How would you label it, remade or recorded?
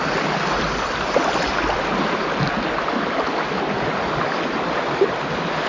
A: recorded